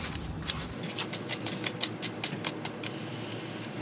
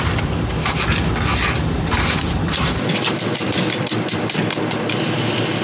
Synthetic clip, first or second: second